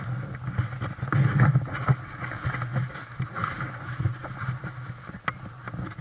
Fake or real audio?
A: real